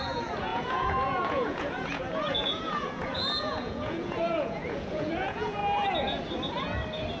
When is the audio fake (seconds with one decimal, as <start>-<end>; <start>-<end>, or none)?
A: 0.0-5.6